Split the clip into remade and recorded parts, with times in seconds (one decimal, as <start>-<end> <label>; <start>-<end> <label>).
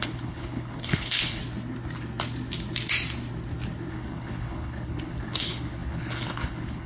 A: 0.0-1.4 remade; 1.4-3.9 recorded; 3.9-6.9 remade